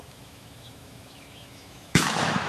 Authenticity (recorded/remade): remade